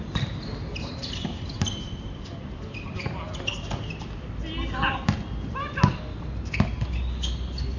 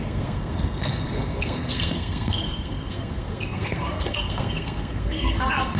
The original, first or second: first